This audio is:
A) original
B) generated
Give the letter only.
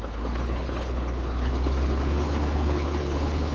B